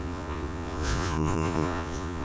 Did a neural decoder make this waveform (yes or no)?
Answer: yes